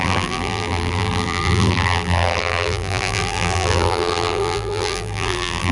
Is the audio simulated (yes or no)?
yes